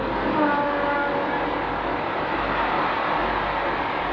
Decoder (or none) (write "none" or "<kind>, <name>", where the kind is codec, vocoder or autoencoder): none